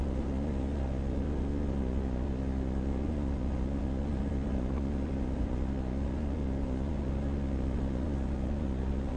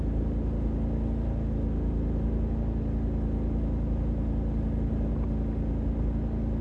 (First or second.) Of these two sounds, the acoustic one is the second